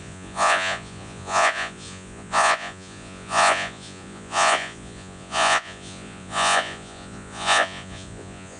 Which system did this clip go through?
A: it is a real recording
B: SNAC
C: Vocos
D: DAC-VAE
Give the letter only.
C